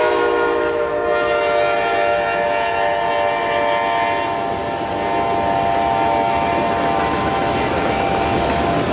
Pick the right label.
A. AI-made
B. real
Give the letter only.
B